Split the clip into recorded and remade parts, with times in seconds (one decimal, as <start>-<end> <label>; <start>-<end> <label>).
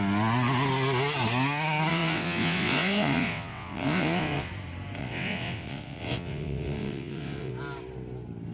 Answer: 0.0-1.9 recorded; 1.9-4.5 remade; 4.5-5.0 recorded; 5.0-7.5 remade; 7.5-8.5 recorded